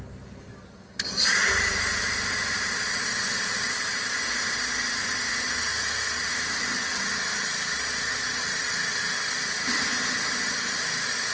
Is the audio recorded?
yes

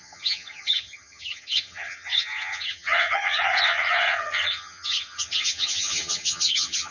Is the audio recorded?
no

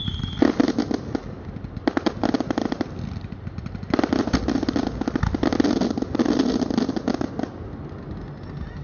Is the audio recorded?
yes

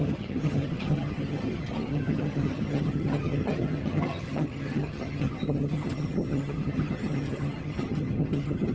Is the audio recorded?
no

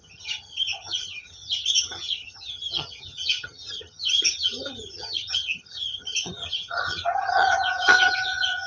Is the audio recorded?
no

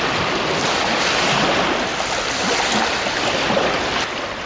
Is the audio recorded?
yes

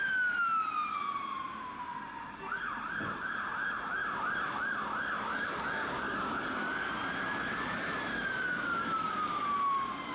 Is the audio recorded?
yes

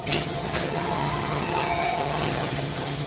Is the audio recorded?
no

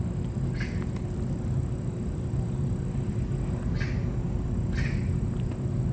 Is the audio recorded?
yes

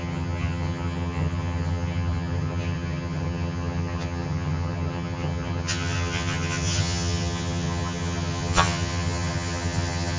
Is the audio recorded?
no